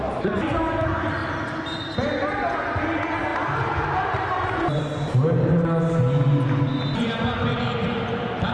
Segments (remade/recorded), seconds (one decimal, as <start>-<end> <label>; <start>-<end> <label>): 0.0-3.3 recorded; 3.3-4.8 remade; 4.8-7.5 recorded; 7.5-8.5 remade